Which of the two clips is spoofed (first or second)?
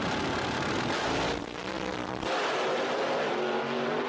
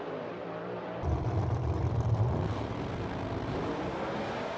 second